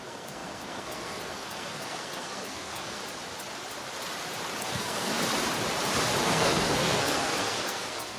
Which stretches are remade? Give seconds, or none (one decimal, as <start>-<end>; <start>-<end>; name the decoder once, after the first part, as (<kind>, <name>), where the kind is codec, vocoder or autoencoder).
0.0-3.0 (codec, SNAC); 4.6-5.1; 6.2-8.2